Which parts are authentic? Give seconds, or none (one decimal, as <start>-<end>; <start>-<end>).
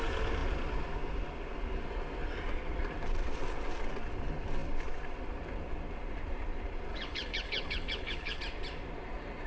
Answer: 0.0-6.9; 8.4-9.5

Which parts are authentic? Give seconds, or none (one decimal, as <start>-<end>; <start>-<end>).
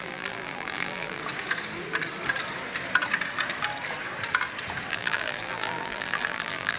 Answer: 1.2-4.9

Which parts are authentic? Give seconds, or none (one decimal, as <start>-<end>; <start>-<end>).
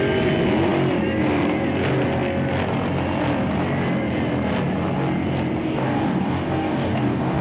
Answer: 0.0-5.6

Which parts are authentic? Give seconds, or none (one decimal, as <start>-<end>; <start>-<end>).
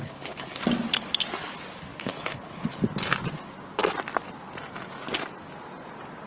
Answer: 0.6-1.9; 2.8-6.3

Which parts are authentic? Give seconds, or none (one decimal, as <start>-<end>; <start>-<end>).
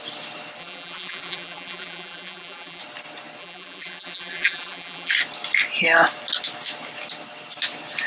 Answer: 0.0-0.6; 2.8-3.4; 5.1-8.1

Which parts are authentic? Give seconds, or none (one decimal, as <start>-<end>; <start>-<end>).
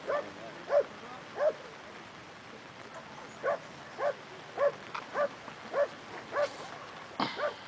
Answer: 0.0-7.7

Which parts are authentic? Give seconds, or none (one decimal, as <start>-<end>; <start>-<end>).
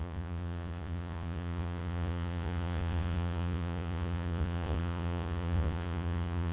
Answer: none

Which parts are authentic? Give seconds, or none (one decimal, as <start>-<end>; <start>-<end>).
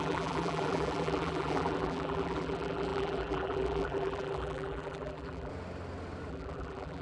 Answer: 5.5-6.3